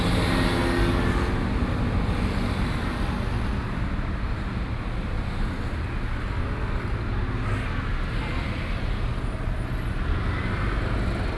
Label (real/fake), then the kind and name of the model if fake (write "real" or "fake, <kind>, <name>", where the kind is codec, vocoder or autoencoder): real